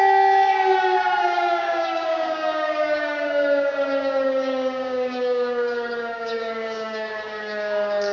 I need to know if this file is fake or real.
fake